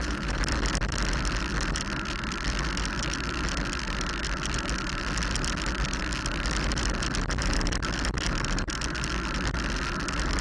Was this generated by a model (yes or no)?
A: no